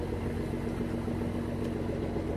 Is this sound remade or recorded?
recorded